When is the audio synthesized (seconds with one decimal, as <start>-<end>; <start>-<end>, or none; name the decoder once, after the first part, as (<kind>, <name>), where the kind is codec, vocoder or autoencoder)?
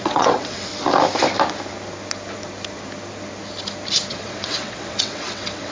0.0-0.7 (vocoder, WaveNeXt); 4.1-5.7